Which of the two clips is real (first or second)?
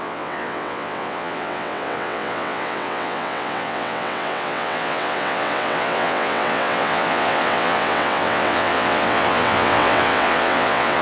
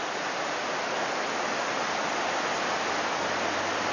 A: second